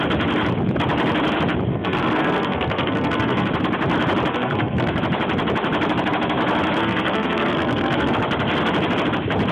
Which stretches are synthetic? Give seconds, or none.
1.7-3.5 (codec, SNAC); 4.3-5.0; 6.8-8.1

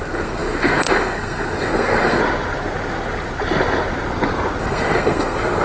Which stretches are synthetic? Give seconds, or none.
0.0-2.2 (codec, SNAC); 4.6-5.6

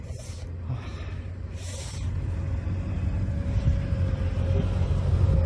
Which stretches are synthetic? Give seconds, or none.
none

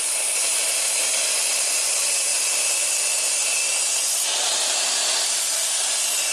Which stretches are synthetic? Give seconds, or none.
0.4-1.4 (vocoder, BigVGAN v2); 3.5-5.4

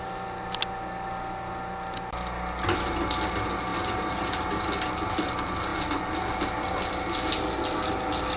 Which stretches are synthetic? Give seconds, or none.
none